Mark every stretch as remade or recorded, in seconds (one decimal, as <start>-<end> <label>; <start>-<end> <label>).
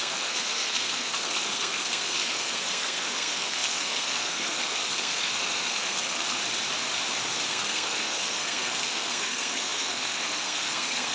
0.0-6.4 remade; 6.4-7.5 recorded; 7.5-11.1 remade